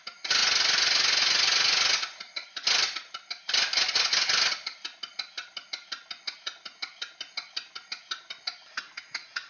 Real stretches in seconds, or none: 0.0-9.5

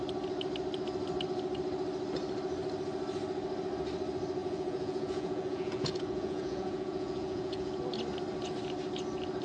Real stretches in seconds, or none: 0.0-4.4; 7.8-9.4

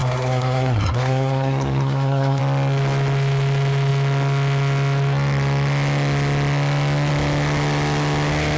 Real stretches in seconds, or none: 2.4-8.6

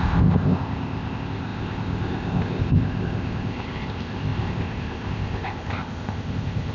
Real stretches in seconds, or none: none

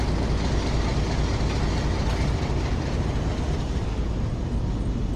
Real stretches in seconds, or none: 0.0-5.2